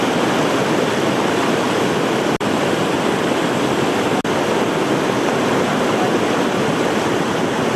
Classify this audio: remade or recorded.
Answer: recorded